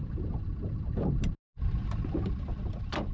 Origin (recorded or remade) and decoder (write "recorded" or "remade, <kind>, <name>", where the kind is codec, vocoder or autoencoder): recorded